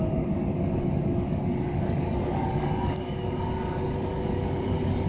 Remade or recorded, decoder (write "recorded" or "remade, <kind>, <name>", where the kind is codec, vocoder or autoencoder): remade, codec, DAC